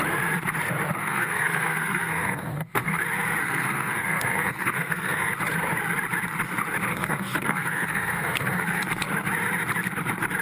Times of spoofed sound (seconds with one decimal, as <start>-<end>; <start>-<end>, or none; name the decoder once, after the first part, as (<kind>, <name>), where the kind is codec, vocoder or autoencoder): 1.0-3.0 (codec, SNAC); 3.4-5.3; 6.9-8.8